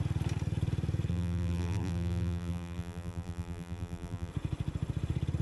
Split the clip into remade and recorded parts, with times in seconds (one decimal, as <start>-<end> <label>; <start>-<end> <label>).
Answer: 0.0-1.1 recorded; 1.1-4.3 remade; 4.3-5.4 recorded